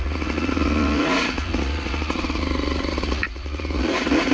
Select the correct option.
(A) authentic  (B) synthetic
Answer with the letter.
B